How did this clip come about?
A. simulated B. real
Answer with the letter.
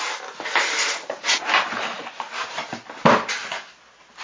B